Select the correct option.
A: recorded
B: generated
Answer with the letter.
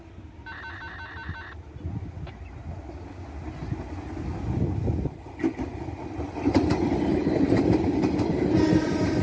A